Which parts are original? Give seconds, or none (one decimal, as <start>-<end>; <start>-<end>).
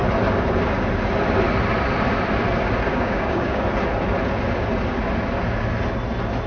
0.0-2.9; 3.6-6.5